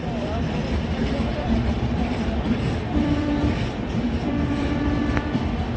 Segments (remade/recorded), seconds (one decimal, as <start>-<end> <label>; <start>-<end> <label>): 0.0-1.3 recorded; 1.3-4.8 remade; 4.8-5.8 recorded

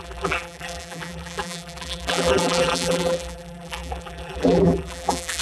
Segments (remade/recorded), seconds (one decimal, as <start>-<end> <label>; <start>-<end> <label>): 0.0-5.4 remade

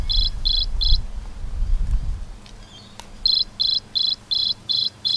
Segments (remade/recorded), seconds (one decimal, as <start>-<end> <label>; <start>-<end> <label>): 0.0-4.4 recorded; 4.4-5.2 remade

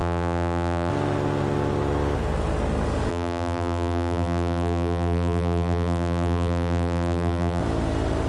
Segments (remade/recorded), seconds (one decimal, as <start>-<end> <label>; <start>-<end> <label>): 0.0-0.9 remade; 0.9-3.1 recorded; 3.1-7.6 remade; 7.6-8.3 recorded

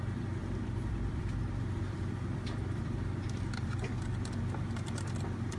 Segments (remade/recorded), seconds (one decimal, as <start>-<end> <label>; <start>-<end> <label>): 0.0-0.4 recorded; 0.4-3.8 remade; 3.8-5.6 recorded

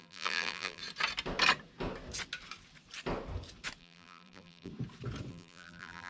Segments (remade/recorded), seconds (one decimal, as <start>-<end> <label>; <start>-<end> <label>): 0.0-0.8 remade; 0.8-3.8 recorded; 3.8-4.7 remade; 4.7-5.3 recorded; 5.3-6.1 remade

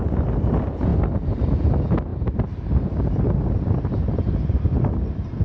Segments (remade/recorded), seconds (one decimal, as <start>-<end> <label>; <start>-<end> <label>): 0.0-2.1 recorded; 2.1-3.7 remade; 3.7-5.4 recorded

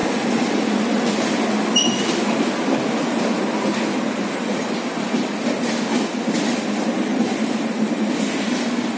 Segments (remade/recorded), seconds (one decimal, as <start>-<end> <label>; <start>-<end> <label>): 0.0-7.1 recorded; 7.1-8.1 remade; 8.1-9.0 recorded